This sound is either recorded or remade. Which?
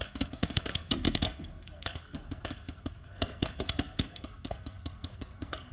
remade